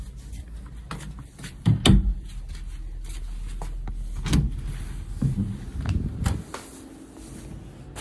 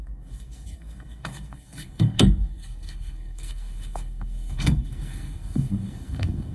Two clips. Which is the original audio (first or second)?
first